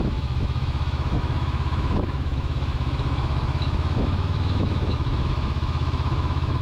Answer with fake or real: fake